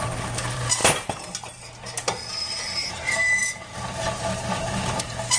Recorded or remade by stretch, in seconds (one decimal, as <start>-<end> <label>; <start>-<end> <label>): 0.0-0.8 remade; 0.8-2.9 recorded; 2.9-5.4 remade

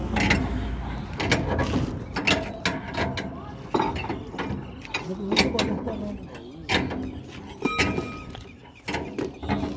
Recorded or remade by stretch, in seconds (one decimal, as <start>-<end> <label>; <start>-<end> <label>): 0.0-9.8 recorded

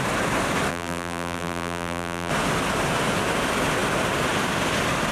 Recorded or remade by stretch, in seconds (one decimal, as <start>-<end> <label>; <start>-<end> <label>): 0.0-0.7 recorded; 0.7-2.3 remade; 2.3-5.1 recorded

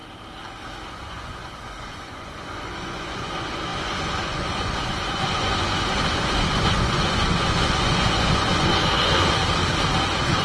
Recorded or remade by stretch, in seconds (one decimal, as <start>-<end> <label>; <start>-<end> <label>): 0.0-0.9 recorded; 0.9-9.4 remade; 9.4-10.0 recorded; 10.0-10.4 remade

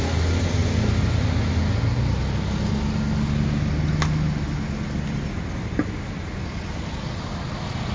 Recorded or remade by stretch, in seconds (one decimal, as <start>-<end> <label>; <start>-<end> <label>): 0.0-7.9 recorded

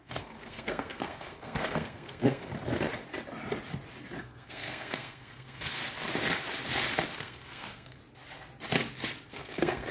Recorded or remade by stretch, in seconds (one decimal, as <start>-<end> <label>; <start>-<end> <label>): 0.0-2.5 remade; 2.5-4.2 recorded; 4.2-5.8 remade; 5.8-7.2 recorded; 7.2-8.0 remade; 8.0-9.3 recorded; 9.3-9.9 remade